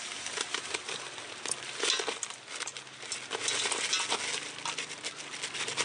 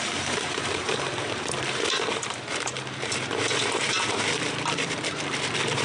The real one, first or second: first